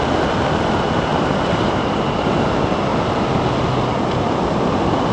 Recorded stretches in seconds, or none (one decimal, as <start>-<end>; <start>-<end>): 0.0-1.1; 2.5-2.9; 3.5-5.1